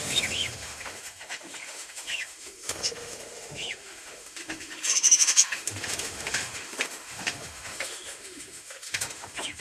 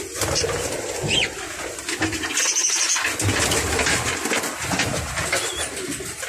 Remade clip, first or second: first